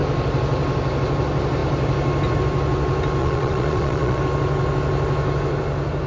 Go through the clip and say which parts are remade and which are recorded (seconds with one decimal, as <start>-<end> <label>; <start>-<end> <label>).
0.0-3.2 recorded; 3.2-4.2 remade; 4.2-6.1 recorded